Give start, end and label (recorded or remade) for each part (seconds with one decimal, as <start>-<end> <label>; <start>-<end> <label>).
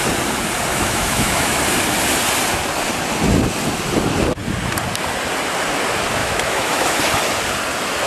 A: 0.0-0.7 recorded; 0.7-1.6 remade; 1.6-6.2 recorded; 6.2-7.0 remade; 7.0-8.1 recorded